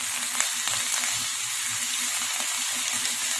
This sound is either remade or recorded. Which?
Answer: recorded